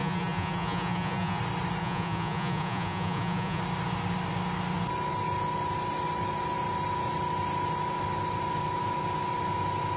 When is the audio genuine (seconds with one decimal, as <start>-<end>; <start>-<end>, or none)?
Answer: 1.4-1.8; 3.6-10.0